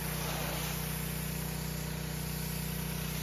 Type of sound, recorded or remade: recorded